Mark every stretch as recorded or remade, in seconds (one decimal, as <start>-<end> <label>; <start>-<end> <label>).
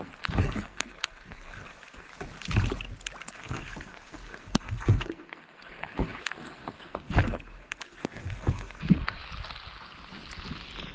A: 0.0-2.1 remade; 2.1-3.3 recorded; 3.3-9.2 remade; 9.2-10.9 recorded